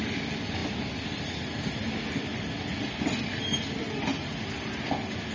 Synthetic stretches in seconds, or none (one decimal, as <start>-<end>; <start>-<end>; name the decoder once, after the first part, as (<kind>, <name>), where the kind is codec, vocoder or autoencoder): none